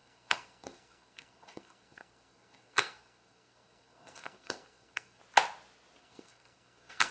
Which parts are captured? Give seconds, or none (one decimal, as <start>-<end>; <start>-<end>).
5.2-6.0